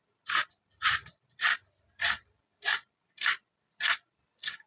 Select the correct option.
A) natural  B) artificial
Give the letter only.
A